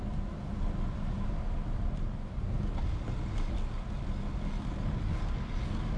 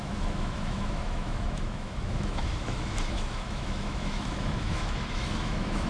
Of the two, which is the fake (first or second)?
second